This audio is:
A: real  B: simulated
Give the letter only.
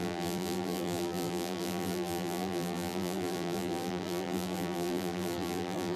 B